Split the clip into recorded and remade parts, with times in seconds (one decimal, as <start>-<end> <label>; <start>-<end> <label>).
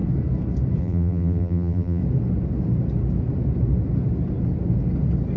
0.0-0.8 recorded; 0.8-2.0 remade; 2.0-5.4 recorded